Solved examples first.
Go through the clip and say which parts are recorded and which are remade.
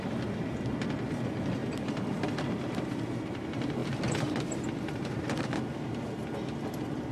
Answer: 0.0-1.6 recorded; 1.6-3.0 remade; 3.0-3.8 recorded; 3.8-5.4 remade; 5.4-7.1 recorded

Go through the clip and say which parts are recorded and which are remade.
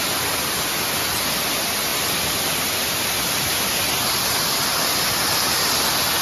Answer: 0.0-1.9 recorded; 1.9-5.1 remade; 5.1-6.2 recorded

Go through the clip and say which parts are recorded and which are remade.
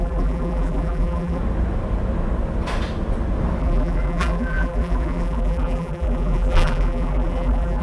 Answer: 0.0-1.4 remade; 1.4-3.6 recorded; 3.6-7.8 remade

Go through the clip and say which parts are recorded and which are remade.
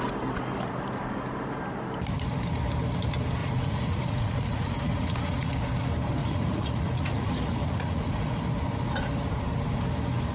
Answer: 0.0-3.4 recorded; 3.4-5.5 remade; 5.5-6.2 recorded; 6.2-8.4 remade; 8.4-10.3 recorded